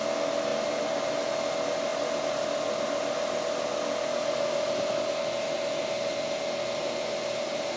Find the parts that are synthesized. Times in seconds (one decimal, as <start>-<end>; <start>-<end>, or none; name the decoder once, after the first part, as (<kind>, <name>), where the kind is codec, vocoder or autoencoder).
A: 0.5-1.2 (vocoder, BigVGAN v2)